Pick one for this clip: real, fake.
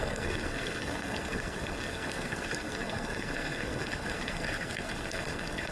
fake